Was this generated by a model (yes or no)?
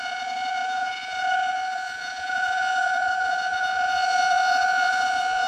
yes